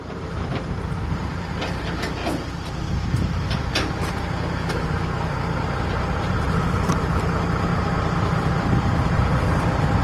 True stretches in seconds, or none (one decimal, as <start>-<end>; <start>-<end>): 1.3-1.8; 2.2-2.9